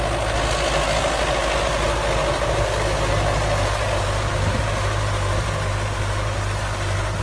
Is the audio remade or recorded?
recorded